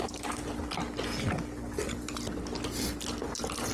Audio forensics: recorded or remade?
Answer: recorded